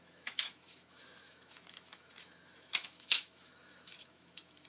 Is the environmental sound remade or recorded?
remade